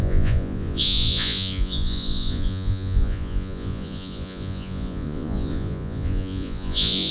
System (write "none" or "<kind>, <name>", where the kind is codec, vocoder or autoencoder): vocoder, Vocos